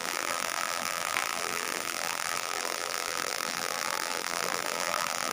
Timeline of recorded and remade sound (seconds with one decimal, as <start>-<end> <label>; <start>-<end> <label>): 0.0-5.3 remade